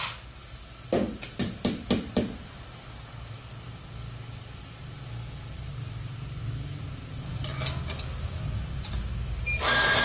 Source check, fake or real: real